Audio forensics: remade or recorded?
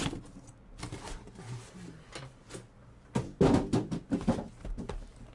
recorded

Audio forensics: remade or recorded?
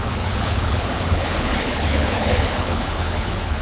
remade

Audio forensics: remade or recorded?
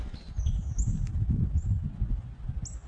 recorded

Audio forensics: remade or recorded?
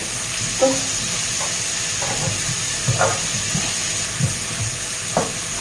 recorded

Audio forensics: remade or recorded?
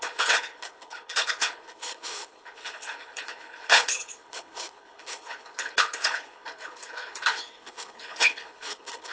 remade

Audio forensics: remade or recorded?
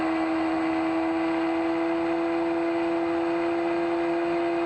recorded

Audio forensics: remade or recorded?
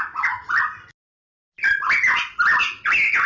recorded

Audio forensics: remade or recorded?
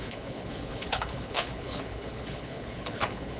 remade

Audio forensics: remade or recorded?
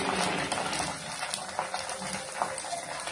recorded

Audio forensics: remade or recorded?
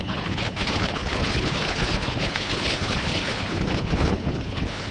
remade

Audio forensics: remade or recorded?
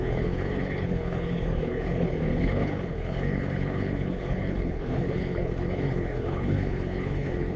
remade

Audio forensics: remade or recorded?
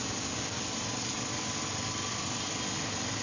recorded